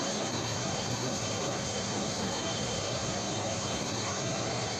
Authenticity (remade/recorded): remade